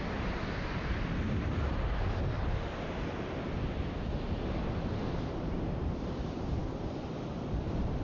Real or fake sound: real